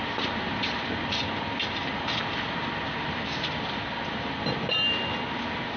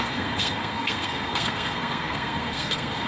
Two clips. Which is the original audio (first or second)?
first